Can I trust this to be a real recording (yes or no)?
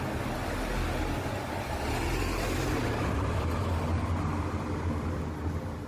yes